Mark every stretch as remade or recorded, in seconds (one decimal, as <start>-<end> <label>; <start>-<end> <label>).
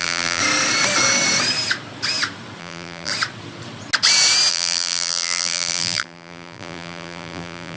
0.0-0.4 remade; 0.4-2.6 recorded; 2.6-3.1 remade; 3.1-4.5 recorded; 4.5-7.8 remade